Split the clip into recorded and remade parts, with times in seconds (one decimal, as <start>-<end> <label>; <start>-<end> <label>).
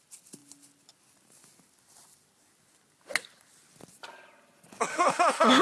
0.0-4.9 recorded; 4.9-5.6 remade